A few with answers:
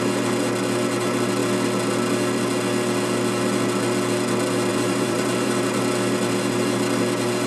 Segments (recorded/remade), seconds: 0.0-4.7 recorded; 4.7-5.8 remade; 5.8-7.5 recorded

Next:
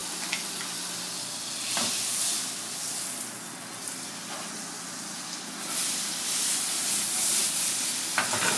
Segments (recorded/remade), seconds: 0.0-8.6 recorded